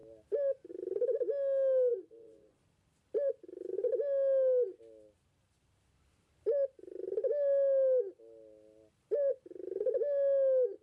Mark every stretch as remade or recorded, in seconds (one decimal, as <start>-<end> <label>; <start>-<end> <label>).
0.0-1.9 recorded; 1.9-2.6 remade; 2.6-10.8 recorded